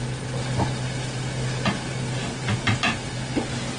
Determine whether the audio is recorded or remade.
recorded